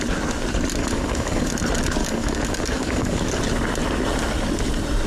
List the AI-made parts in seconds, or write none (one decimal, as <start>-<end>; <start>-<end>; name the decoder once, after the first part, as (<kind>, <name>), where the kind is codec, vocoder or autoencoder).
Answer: 0.8-1.5 (codec, DAC); 2.0-3.4